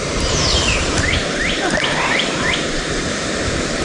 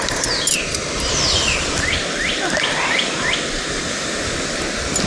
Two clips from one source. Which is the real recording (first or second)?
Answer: second